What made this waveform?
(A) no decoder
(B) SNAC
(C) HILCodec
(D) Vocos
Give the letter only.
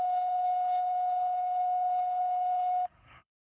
C